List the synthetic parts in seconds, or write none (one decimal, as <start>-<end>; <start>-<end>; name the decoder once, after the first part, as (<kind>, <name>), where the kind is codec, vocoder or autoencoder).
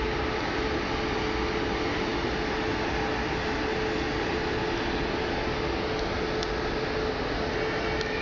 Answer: none